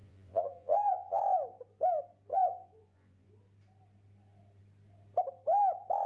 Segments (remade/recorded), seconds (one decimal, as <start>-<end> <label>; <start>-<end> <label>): 0.0-1.2 remade; 1.2-2.3 recorded; 2.3-3.3 remade; 3.3-6.1 recorded